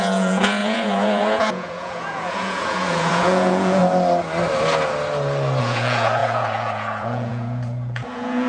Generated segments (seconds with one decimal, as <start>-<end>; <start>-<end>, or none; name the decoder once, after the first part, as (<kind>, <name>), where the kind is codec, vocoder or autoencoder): 0.0-3.8 (vocoder, Vocos); 5.6-8.5